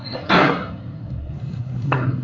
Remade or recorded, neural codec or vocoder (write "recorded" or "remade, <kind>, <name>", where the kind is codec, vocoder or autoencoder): remade, codec, SNAC